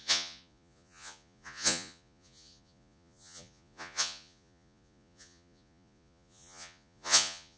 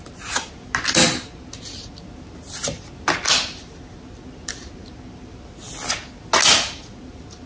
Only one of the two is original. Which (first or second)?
second